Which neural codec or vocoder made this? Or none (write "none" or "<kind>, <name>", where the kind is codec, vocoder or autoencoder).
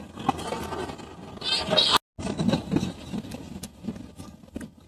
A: none